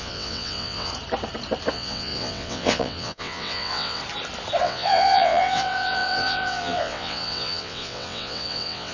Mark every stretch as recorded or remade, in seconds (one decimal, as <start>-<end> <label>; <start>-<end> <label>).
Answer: 0.0-0.9 remade; 0.9-1.7 recorded; 1.7-4.0 remade; 4.0-4.6 recorded; 4.6-8.9 remade

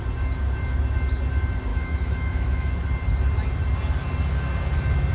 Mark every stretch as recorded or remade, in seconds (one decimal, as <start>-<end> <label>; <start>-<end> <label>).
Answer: 0.0-1.7 recorded; 1.7-2.7 remade; 2.7-5.1 recorded

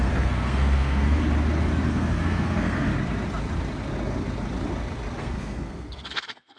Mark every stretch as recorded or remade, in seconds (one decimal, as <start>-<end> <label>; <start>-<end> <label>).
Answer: 0.0-1.2 remade; 1.2-1.9 recorded; 1.9-2.9 remade; 2.9-5.2 recorded; 5.2-6.6 remade

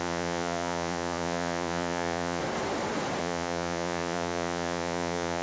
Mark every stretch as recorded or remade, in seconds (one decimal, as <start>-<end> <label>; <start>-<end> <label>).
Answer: 0.0-2.4 remade; 2.4-3.2 recorded; 3.2-5.4 remade